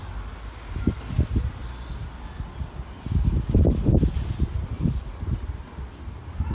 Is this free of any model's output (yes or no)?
yes